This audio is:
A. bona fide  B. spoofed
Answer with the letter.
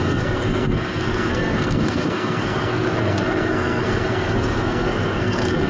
B